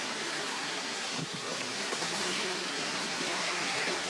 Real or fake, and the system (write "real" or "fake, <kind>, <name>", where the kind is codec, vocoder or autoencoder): fake, codec, SNAC